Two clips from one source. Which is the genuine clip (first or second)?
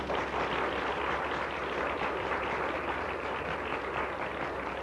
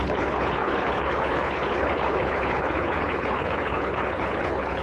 first